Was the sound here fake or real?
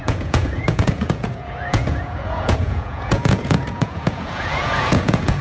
fake